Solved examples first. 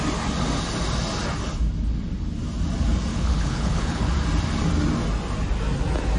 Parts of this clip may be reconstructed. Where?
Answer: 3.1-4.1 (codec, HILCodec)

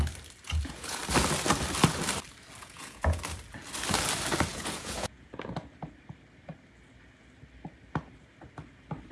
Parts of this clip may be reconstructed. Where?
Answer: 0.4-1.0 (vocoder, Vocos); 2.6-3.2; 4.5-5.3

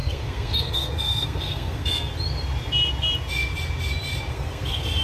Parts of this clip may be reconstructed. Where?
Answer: 0.0-2.1 (codec, SNAC); 4.3-5.0

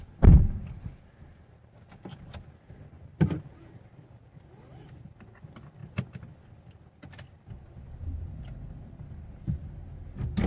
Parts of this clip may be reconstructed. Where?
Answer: none